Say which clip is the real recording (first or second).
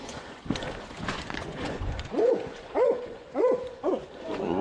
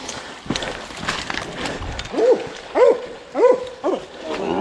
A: second